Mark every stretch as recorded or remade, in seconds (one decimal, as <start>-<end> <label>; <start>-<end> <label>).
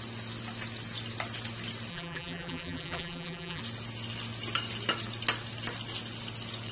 0.0-1.9 recorded; 1.9-3.6 remade; 3.6-6.7 recorded